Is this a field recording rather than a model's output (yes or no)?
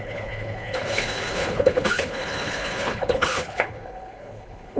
no